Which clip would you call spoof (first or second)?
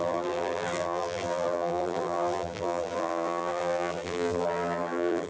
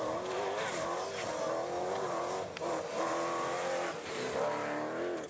first